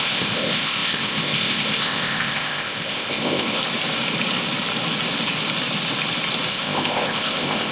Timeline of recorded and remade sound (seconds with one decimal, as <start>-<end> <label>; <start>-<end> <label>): 0.0-3.6 remade; 3.6-6.5 recorded; 6.5-7.7 remade